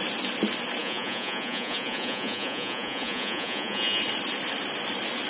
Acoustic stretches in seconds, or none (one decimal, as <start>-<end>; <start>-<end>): 0.0-0.8; 4.0-5.3